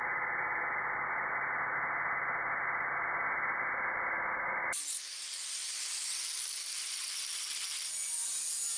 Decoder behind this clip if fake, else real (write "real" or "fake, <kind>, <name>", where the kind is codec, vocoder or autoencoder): real